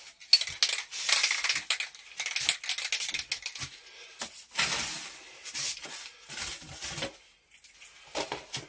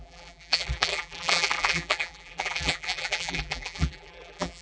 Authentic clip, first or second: first